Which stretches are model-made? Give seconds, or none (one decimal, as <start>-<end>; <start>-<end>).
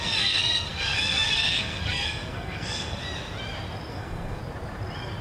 0.0-3.0; 3.9-4.4